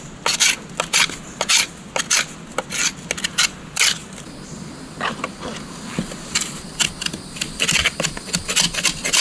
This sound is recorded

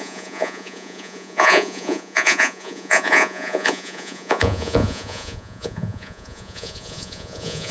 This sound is remade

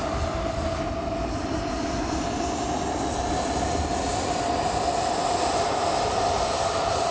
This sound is recorded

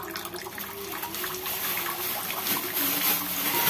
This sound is recorded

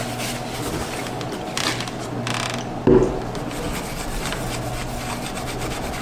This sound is recorded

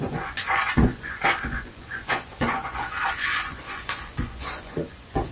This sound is remade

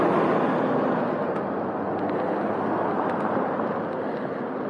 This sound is recorded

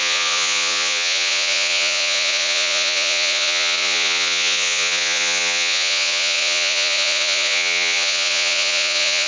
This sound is remade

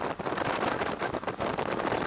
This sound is recorded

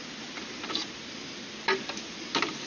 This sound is recorded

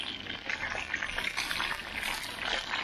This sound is recorded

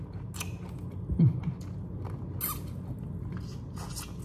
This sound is recorded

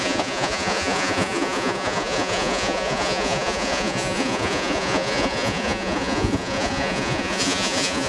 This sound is remade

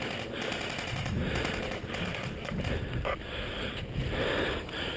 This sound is recorded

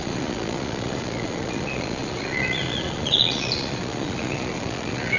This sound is remade